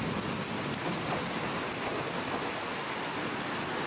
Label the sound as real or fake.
real